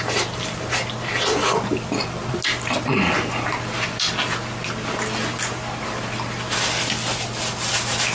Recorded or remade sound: recorded